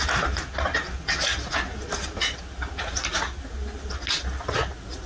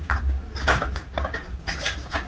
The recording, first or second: first